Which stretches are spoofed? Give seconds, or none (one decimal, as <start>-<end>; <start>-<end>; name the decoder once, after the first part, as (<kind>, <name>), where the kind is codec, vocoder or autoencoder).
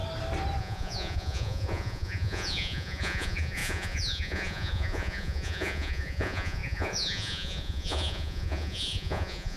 0.6-9.6 (vocoder, Vocos)